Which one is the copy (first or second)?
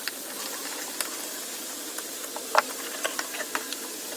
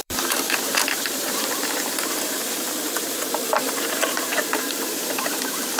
second